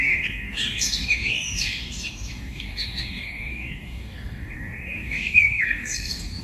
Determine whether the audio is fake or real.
fake